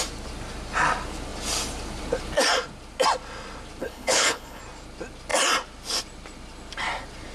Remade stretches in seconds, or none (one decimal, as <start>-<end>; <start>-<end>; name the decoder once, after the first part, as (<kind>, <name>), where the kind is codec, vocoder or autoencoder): 3.8-4.6 (codec, HILCodec)